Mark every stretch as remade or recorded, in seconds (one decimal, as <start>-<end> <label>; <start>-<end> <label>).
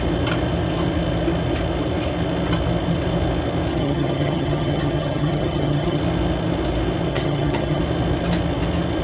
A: 0.0-3.7 recorded; 3.7-6.0 remade; 6.0-7.1 recorded; 7.1-7.8 remade; 7.8-9.0 recorded